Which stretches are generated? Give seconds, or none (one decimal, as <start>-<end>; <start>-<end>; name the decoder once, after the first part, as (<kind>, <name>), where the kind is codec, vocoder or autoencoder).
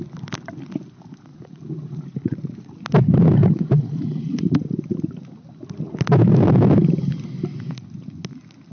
1.3-2.7 (vocoder, Vocos); 3.4-4.9